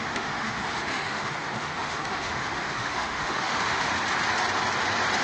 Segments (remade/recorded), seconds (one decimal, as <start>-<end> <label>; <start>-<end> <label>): 0.0-3.9 remade; 3.9-5.2 recorded